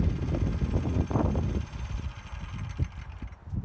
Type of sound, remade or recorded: recorded